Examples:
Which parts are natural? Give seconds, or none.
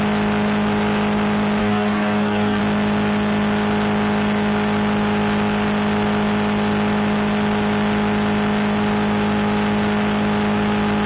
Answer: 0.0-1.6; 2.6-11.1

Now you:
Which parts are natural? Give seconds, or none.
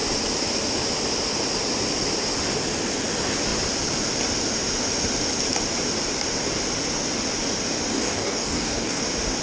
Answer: 0.0-7.9; 9.0-9.4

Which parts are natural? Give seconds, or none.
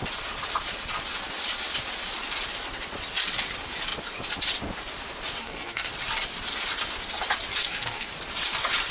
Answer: 0.0-5.4; 5.9-7.6; 8.1-8.9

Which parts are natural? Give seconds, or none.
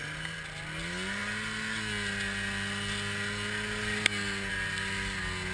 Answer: 0.0-5.5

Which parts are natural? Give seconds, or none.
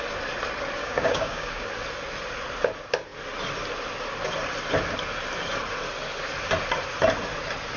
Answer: 0.0-0.8; 1.7-7.8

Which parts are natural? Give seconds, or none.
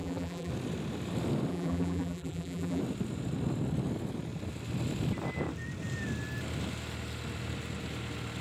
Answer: 0.5-1.5; 2.8-8.4